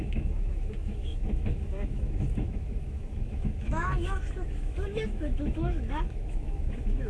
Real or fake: fake